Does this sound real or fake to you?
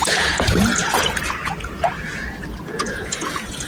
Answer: fake